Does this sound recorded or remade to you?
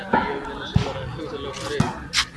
recorded